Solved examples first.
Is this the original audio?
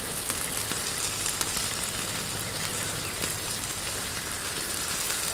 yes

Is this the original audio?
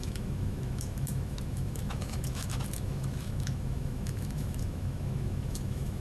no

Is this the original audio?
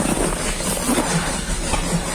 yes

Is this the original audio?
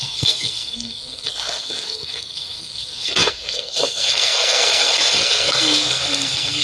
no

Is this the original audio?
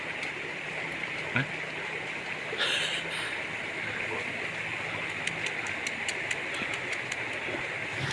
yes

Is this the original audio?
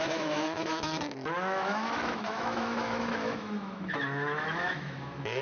no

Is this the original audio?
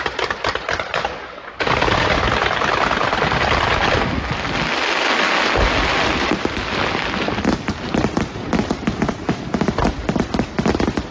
yes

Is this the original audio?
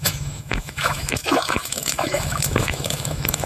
no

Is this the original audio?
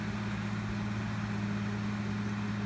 yes